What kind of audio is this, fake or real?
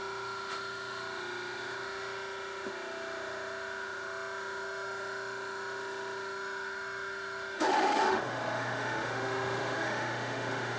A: fake